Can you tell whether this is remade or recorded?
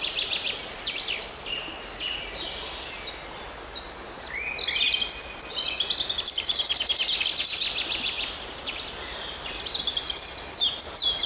recorded